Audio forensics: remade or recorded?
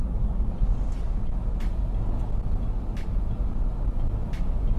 recorded